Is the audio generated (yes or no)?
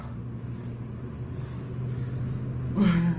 no